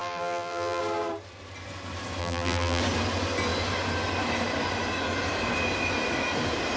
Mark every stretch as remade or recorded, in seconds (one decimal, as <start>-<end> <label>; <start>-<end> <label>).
0.0-0.8 remade; 0.8-2.2 recorded; 2.2-2.8 remade; 2.8-6.8 recorded